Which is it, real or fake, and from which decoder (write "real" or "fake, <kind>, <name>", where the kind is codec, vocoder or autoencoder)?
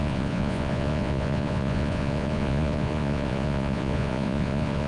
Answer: fake, vocoder, Vocos